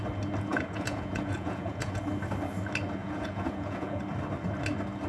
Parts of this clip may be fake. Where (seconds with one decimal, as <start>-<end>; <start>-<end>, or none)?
0.5-2.0; 3.0-4.0